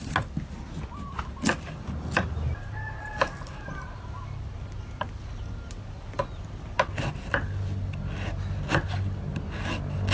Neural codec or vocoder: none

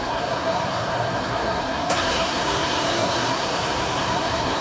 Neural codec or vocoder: codec, SNAC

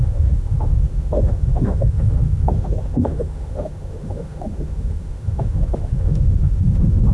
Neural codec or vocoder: autoencoder, DAC-VAE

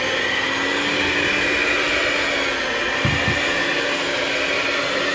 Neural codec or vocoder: none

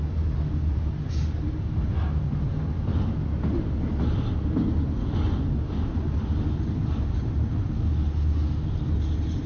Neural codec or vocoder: none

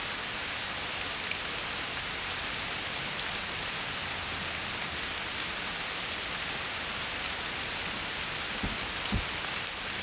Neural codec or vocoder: none